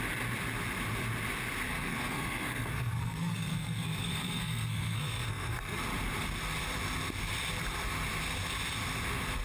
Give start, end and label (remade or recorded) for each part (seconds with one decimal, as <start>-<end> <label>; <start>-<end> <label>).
0.0-1.7 recorded; 1.7-5.8 remade; 5.8-9.4 recorded